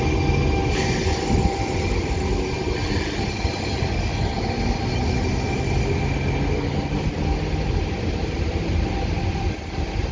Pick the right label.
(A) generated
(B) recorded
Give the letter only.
B